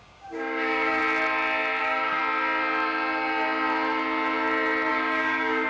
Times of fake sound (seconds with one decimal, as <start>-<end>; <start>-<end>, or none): 0.0-1.0; 1.8-2.2; 4.9-5.7